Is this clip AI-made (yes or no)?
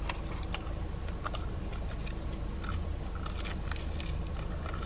no